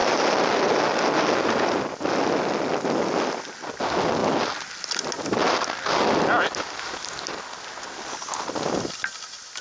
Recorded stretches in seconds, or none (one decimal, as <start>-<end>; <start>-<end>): 0.0-9.6